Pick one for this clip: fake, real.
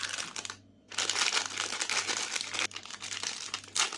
real